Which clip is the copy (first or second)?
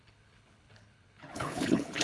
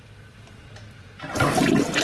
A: first